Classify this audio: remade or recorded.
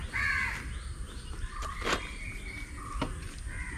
recorded